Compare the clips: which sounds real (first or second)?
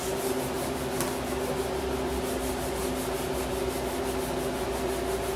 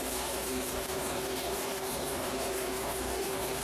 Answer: first